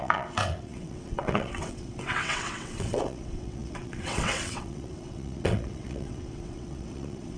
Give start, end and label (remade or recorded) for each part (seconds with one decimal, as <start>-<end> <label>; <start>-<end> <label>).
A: 0.0-7.4 remade